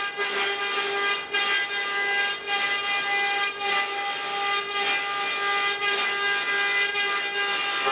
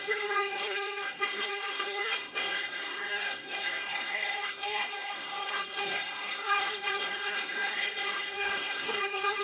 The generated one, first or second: second